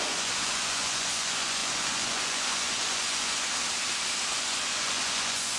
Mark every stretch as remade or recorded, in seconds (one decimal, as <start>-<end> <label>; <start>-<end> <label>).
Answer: 0.0-3.5 remade; 3.5-4.3 recorded; 4.3-5.6 remade